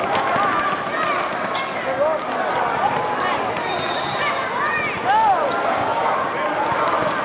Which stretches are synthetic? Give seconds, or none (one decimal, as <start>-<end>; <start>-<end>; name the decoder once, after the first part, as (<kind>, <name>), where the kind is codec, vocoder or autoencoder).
5.9-7.2 (vocoder, BigVGAN v2)